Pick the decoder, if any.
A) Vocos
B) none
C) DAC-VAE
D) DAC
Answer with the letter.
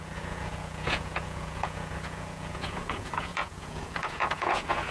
A